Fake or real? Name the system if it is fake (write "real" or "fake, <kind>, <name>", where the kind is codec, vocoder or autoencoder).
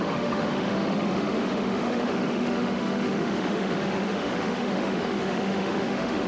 fake, autoencoder, DAC-VAE